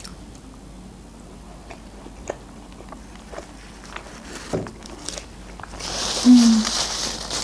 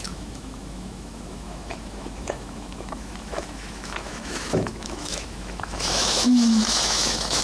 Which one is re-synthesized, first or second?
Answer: second